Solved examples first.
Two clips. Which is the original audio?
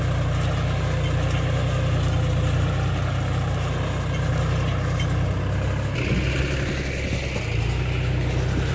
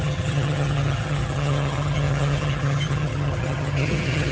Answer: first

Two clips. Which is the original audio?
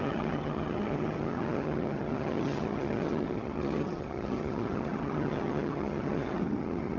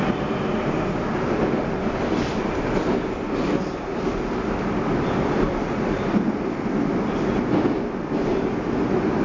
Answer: second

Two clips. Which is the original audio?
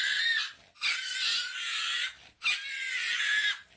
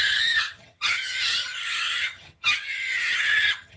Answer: first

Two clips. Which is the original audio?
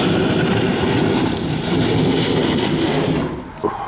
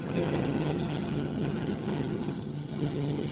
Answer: first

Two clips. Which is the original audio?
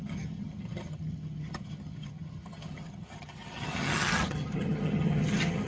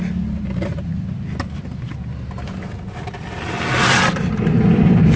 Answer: second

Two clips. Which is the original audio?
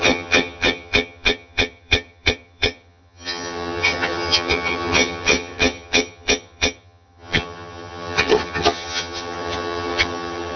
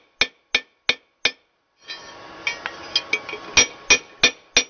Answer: second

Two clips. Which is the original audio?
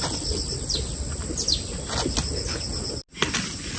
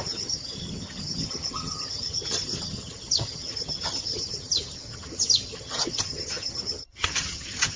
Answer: first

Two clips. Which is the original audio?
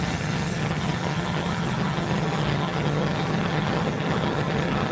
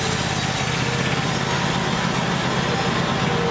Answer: second